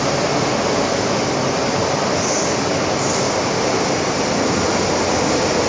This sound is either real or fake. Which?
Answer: real